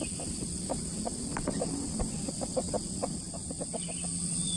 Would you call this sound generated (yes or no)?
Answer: no